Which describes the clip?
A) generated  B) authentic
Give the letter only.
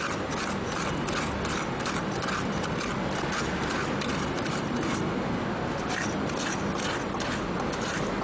B